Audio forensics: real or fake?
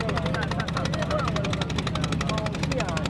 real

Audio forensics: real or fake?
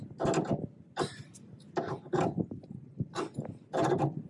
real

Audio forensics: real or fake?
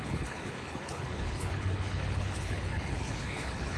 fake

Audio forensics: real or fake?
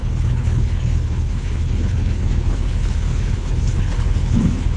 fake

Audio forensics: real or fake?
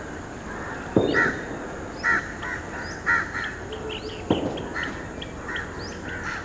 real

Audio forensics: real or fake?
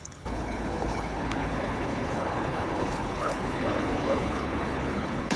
fake